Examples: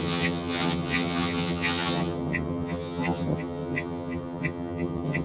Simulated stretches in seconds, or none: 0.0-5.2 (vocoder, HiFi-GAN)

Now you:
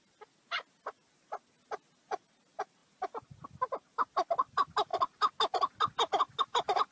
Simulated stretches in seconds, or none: none

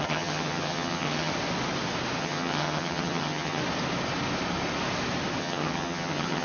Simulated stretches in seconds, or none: 0.0-1.3 (vocoder, HiFi-GAN); 2.2-3.6; 5.4-6.4

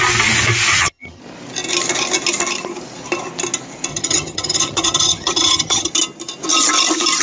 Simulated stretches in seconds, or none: 0.7-1.2 (vocoder, HiFi-GAN); 3.9-5.9

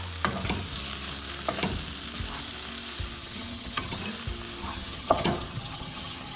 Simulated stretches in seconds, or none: 3.2-4.0 (vocoder, HiFi-GAN); 4.6-6.4

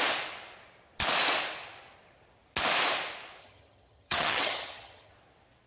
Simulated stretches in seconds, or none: 3.4-5.1 (vocoder, HiFi-GAN)